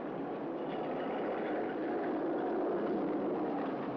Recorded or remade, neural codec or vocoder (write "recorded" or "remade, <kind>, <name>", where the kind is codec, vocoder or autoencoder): recorded